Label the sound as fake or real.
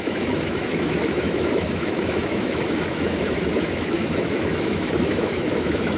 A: fake